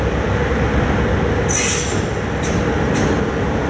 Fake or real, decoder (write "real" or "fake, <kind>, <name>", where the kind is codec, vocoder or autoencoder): real